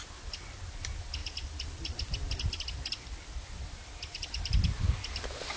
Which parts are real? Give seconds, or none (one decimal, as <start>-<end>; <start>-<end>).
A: 0.0-5.6